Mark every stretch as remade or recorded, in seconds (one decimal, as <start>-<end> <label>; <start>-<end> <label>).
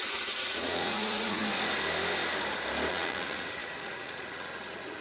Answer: 0.0-1.4 remade; 1.4-2.9 recorded; 2.9-5.0 remade